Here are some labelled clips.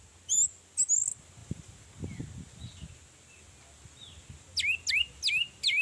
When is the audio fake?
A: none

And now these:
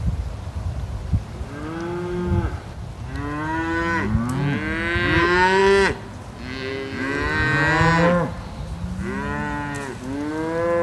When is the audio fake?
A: none

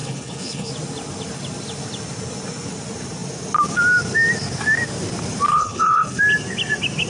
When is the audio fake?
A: 0.0-0.7 (codec, HILCodec); 5.5-6.2

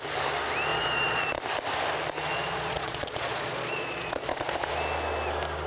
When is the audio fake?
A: 0.7-1.2 (vocoder, Vocos); 2.3-4.7

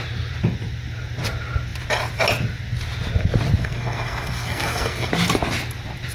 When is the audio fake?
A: 3.6-5.1 (codec, SNAC)

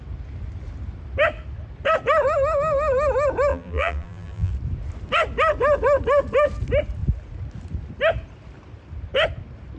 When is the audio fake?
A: 3.5-4.5 (vocoder, BigVGAN v2)

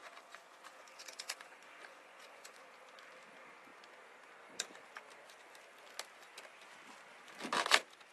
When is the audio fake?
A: 0.0-2.7 (vocoder, Vocos)

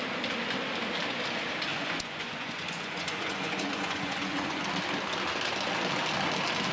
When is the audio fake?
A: 1.7-4.6 (vocoder, Vocos)